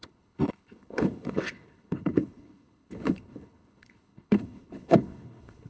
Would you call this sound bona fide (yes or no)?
no